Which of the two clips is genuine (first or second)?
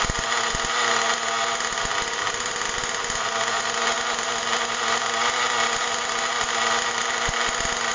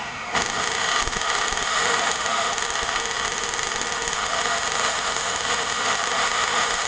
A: first